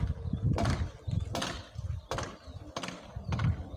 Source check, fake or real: real